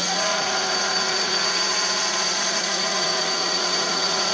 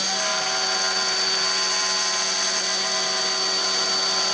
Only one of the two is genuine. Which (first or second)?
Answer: second